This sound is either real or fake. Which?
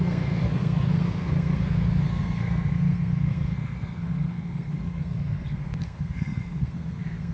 fake